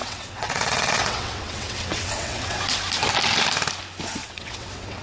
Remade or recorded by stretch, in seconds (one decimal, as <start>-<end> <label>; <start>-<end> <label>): 0.0-2.6 remade; 2.6-4.2 recorded; 4.2-5.0 remade